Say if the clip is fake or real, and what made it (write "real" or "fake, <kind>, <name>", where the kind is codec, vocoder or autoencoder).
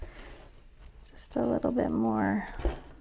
real